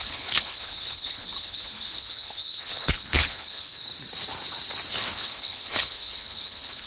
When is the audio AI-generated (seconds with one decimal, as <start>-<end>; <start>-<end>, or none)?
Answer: 0.0-3.9; 4.9-6.9